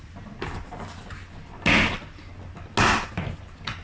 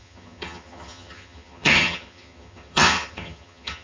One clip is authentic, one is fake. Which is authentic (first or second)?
first